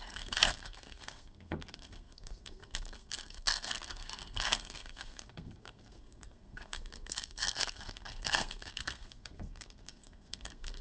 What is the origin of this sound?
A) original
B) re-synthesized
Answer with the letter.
B